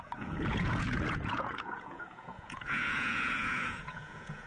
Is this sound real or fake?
fake